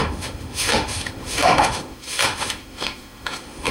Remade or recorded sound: remade